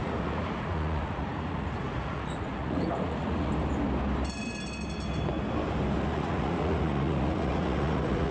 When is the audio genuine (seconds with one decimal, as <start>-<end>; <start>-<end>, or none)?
3.5-6.0

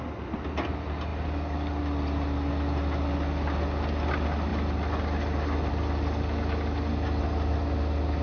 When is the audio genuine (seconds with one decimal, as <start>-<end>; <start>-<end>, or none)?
0.0-8.2

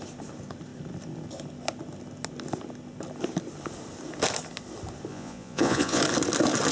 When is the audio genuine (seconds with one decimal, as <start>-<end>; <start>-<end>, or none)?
0.0-5.1; 6.0-6.7

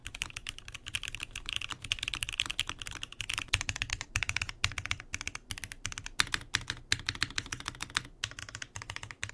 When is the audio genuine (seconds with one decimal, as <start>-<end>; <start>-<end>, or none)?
4.4-8.4

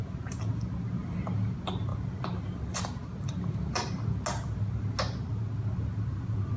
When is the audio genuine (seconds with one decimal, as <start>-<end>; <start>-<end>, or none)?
0.0-6.6

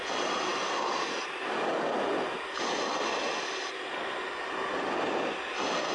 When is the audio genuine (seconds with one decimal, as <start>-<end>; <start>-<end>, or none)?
0.0-5.9